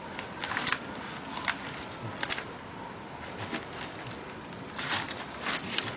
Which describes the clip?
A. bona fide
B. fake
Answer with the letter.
A